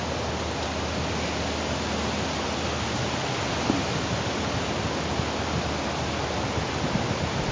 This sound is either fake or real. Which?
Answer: real